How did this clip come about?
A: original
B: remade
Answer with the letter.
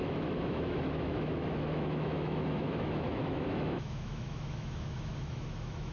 B